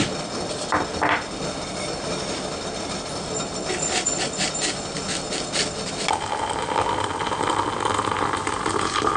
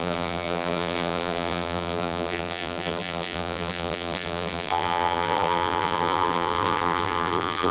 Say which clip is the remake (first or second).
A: second